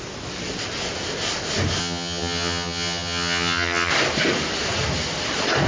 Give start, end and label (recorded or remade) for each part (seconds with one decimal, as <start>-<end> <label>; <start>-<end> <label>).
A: 0.0-1.8 recorded; 1.8-3.9 remade; 3.9-5.7 recorded